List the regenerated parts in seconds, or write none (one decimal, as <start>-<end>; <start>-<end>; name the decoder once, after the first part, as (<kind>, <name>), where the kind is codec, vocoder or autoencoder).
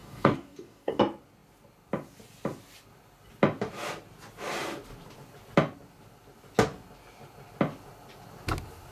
0.0-1.0 (codec, DAC)